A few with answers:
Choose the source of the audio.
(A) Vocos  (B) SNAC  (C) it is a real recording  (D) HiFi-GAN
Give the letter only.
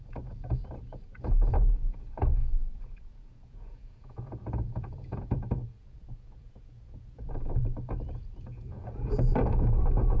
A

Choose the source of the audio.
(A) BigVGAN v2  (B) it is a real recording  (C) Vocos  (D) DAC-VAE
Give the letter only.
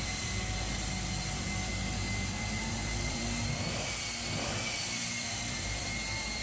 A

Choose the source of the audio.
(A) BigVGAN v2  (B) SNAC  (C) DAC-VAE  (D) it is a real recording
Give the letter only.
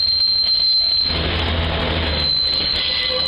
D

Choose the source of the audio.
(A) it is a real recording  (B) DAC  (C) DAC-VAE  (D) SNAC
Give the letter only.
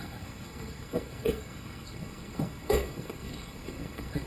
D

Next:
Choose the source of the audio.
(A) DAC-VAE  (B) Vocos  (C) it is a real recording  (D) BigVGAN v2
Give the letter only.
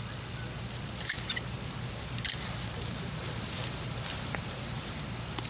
D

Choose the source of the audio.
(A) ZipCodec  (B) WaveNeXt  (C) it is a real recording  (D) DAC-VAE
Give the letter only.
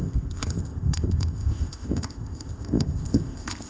A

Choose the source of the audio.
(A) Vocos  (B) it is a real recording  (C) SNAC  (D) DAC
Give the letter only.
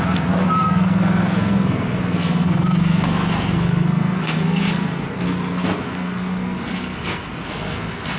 C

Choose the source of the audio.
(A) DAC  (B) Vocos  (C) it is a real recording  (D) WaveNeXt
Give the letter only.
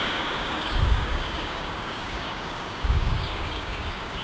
A